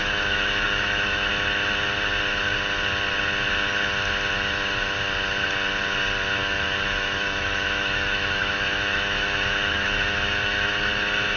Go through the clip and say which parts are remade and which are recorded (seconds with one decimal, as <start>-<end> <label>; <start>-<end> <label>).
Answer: 0.0-1.3 remade; 1.3-6.4 recorded; 6.4-10.9 remade; 10.9-11.4 recorded